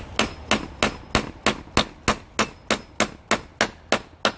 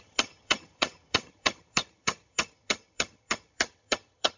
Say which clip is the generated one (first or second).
second